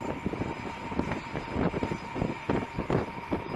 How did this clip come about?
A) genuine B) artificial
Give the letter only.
A